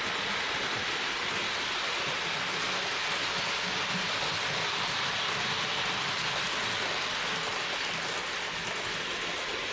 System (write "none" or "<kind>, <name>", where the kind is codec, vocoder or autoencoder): none